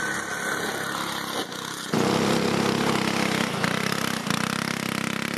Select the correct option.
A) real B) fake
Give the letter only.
A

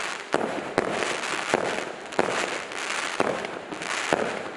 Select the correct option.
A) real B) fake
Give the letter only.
A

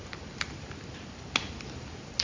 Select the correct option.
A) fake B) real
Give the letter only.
B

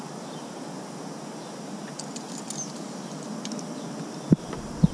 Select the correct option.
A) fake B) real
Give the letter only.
B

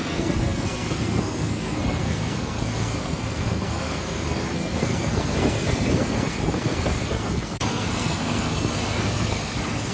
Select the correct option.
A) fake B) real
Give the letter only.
A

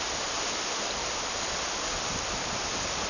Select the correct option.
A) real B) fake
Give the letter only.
A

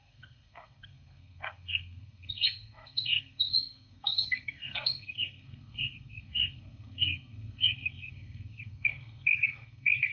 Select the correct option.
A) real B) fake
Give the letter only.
B